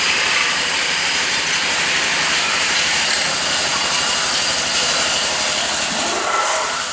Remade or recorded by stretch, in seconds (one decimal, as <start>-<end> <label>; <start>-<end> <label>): 0.0-2.1 recorded; 2.1-3.0 remade; 3.0-6.9 recorded